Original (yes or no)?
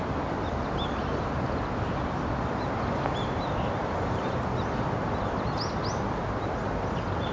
yes